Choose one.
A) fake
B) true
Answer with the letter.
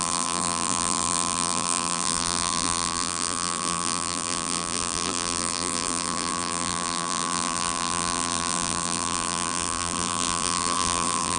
A